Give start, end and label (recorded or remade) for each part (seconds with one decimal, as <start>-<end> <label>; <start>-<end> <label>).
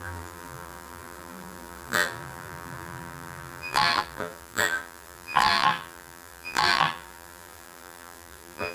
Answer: 0.0-8.7 remade